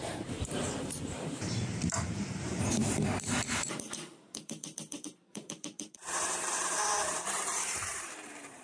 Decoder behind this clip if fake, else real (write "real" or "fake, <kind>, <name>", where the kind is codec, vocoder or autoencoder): fake, vocoder, BigVGAN v2